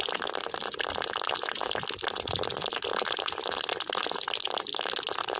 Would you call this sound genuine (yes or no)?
yes